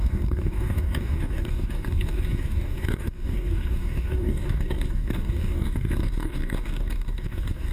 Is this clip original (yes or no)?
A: no